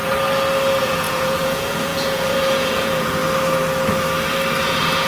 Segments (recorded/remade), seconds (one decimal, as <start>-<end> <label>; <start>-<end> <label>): 0.0-0.8 recorded; 0.8-3.2 remade; 3.2-4.6 recorded; 4.6-5.1 remade